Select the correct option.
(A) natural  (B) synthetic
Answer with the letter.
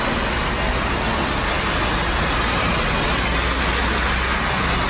A